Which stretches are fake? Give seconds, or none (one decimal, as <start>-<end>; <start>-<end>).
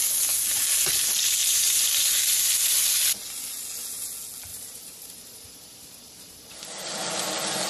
1.4-2.0; 4.5-7.0